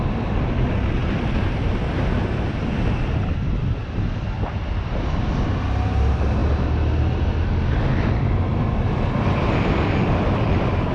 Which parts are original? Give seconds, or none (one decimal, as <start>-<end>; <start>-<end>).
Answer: 0.0-10.9